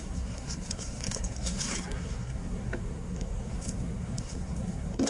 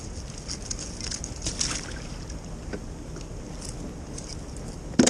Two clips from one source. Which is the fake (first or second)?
first